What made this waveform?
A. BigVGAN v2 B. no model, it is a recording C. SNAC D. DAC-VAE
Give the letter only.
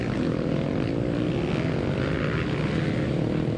B